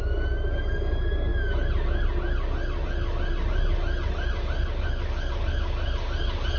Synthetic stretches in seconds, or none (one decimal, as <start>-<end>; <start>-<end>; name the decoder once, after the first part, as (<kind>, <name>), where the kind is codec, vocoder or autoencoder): none